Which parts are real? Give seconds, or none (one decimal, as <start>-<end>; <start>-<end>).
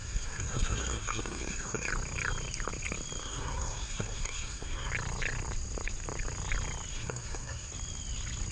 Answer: 1.9-3.2; 4.9-6.9; 7.7-8.5